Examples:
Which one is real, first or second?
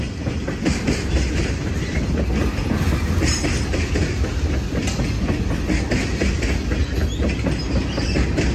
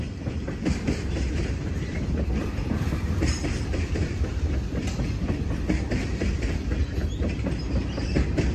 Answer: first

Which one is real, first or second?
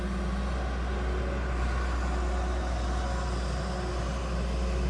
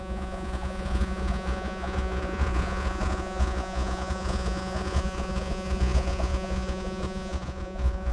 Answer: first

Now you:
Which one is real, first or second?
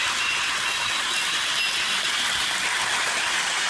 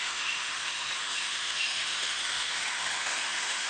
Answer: first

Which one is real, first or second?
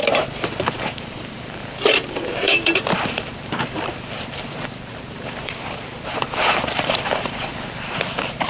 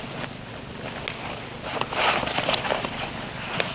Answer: second